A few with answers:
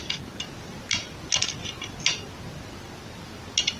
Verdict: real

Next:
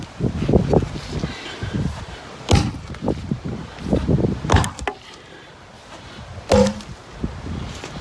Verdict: real